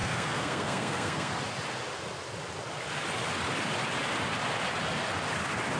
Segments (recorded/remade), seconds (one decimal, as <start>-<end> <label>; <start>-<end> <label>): 0.0-1.3 remade; 1.3-5.8 recorded